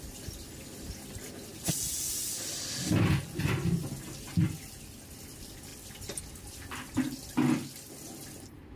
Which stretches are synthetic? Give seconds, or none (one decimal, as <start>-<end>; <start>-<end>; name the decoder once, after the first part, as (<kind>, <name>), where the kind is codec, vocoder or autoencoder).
none

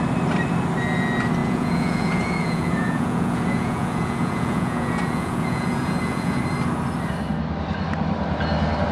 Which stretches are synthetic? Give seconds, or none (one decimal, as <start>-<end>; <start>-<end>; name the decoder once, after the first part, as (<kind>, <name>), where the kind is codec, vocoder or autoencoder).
1.4-6.4 (vocoder, Vocos)

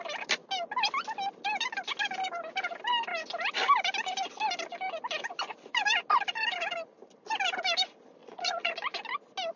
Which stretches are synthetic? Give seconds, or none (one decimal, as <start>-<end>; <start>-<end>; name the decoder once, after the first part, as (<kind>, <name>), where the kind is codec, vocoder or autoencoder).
8.2-8.7 (vocoder, Vocos)

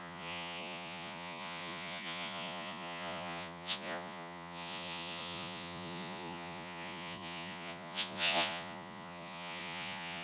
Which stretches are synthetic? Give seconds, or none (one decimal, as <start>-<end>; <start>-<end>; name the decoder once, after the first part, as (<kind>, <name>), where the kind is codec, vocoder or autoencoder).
0.0-10.2 (vocoder, Vocos)

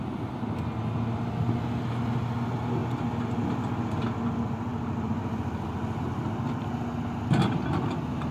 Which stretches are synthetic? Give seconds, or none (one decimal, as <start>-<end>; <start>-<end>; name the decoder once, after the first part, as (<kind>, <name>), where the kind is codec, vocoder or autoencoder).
none

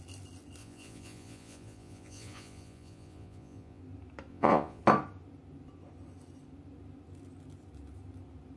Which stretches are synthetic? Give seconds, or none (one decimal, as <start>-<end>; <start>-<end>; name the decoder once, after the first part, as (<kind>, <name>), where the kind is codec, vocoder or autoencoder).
0.6-3.8 (vocoder, Vocos); 4.3-4.8

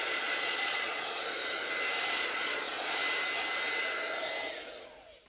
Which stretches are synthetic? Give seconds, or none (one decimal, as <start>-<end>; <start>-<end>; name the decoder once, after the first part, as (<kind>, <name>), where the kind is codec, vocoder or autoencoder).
0.0-1.4 (vocoder, Vocos); 2.1-3.0

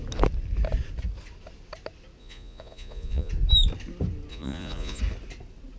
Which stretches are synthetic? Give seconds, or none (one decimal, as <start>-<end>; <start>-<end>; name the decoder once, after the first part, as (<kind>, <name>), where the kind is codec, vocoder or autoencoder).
2.2-3.3 (vocoder, Vocos); 4.3-5.0